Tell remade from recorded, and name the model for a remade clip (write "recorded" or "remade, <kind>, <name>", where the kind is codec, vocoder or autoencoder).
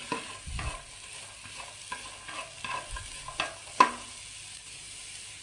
recorded